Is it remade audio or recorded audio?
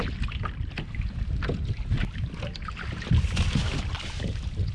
recorded